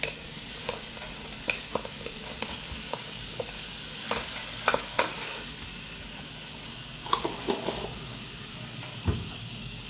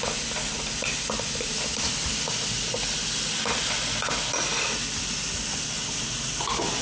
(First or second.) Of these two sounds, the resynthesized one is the first